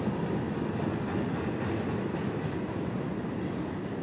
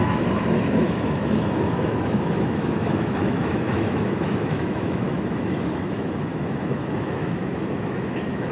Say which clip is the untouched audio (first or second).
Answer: first